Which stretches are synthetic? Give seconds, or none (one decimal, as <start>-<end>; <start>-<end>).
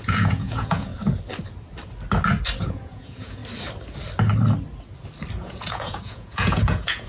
0.0-0.9; 2.6-3.4; 5.4-7.1